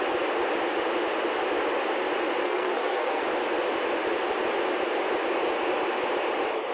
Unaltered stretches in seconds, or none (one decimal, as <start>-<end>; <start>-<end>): 0.0-2.4; 3.2-6.7